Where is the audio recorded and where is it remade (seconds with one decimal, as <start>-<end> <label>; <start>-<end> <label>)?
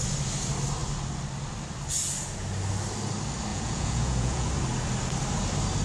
0.0-3.5 recorded; 3.5-4.5 remade; 4.5-5.8 recorded